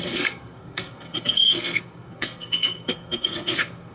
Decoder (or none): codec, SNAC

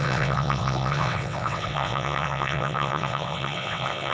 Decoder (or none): vocoder, WaveNeXt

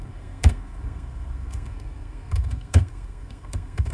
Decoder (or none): codec, SNAC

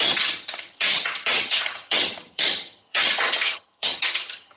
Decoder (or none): vocoder, HiFi-GAN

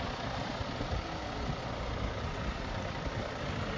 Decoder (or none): none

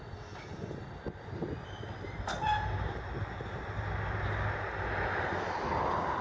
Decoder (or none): none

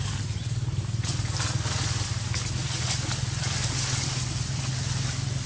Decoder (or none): none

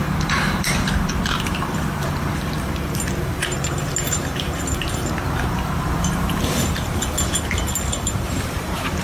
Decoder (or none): vocoder, BigVGAN v2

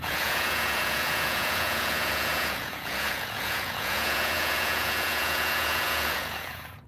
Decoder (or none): vocoder, Vocos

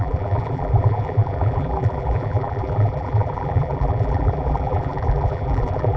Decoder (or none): vocoder, BigVGAN v2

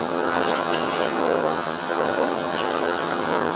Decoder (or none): vocoder, HiFi-GAN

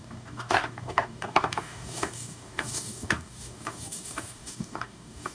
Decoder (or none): codec, DAC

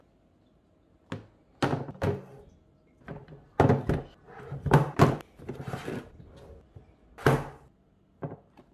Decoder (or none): none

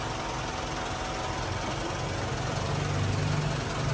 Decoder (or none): none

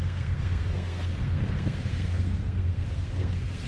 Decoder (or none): codec, SNAC